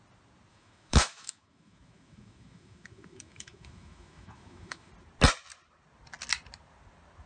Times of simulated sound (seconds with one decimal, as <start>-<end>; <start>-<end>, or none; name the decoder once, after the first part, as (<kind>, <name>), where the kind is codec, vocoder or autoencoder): 0.5-4.9 (autoencoder, DAC-VAE)